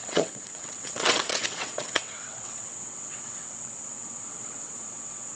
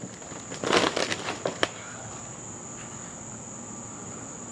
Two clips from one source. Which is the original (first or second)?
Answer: second